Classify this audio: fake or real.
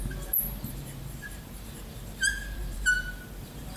fake